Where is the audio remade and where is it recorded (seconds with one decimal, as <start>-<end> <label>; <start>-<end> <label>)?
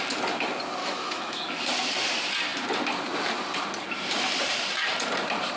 0.0-0.8 recorded; 0.8-1.6 remade; 1.6-5.6 recorded